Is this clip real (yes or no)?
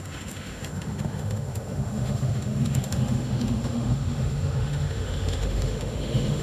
no